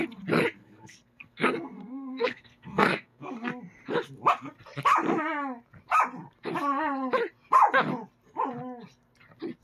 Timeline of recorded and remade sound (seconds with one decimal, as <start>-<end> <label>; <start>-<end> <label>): 0.0-0.6 recorded; 0.6-3.5 remade; 3.5-9.6 recorded